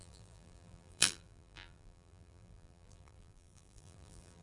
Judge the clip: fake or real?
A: fake